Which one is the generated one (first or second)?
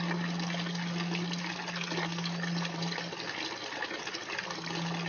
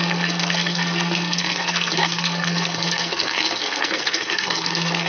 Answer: second